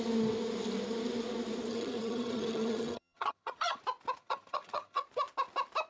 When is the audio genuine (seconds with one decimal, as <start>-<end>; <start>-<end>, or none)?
0.0-1.7; 3.8-4.2; 5.0-5.9